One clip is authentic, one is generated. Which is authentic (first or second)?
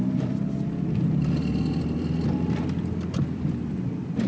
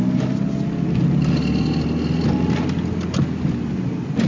second